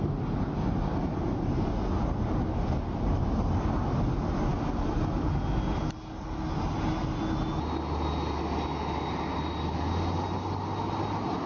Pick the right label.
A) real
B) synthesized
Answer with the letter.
A